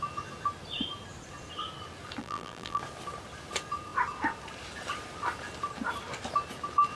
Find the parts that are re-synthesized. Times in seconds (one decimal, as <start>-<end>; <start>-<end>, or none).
2.2-2.8